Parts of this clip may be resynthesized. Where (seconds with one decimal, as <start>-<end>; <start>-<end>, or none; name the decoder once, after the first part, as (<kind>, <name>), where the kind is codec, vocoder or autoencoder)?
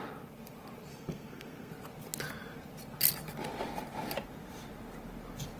0.9-1.7 (codec, SNAC)